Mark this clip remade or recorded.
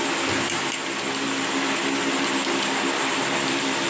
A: recorded